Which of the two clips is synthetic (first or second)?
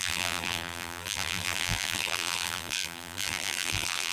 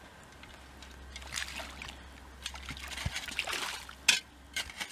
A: first